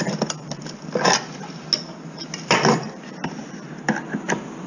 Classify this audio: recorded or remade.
recorded